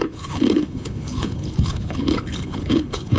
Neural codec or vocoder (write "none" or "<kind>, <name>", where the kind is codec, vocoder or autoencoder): codec, HILCodec